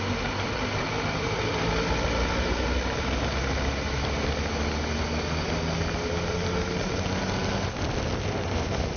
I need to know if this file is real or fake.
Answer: real